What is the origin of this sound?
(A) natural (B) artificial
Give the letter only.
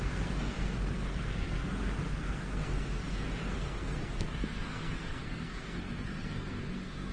B